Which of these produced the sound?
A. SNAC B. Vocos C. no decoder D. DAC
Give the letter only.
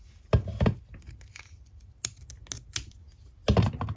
C